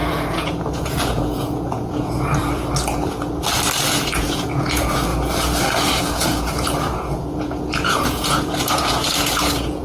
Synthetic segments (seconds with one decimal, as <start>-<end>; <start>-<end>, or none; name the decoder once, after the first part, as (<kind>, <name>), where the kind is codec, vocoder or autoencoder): 0.0-2.4 (vocoder, Vocos); 3.9-5.1; 6.0-9.8